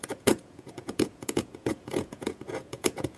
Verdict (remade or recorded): remade